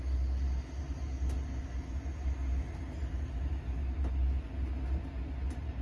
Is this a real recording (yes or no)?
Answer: yes